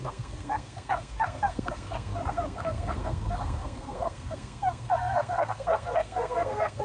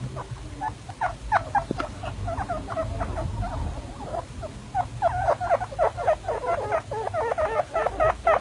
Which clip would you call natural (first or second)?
second